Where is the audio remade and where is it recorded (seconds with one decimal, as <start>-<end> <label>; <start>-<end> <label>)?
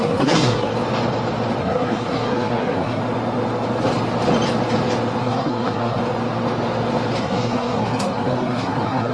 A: 0.0-0.7 remade; 0.7-1.6 recorded; 1.6-3.0 remade; 3.0-5.2 recorded; 5.2-6.0 remade; 6.0-7.2 recorded; 7.2-9.1 remade